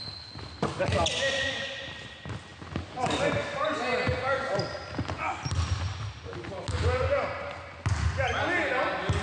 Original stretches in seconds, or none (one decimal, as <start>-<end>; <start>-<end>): 0.0-9.2